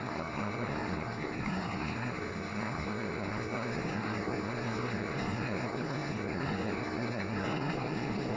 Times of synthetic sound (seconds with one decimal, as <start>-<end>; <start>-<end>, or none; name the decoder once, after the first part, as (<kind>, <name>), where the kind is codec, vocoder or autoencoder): 0.0-8.4 (codec, SNAC)